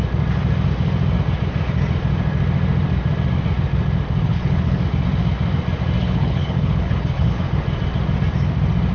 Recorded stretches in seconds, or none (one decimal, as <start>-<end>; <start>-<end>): 0.0-4.2; 4.8-6.0; 7.4-8.9